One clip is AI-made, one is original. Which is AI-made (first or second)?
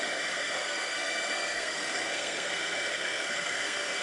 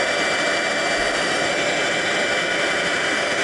first